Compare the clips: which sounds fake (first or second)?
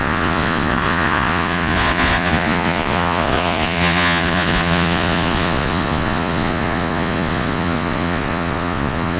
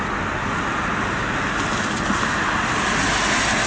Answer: first